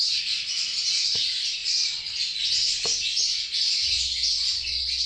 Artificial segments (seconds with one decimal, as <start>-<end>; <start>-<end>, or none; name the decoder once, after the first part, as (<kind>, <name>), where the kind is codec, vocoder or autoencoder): none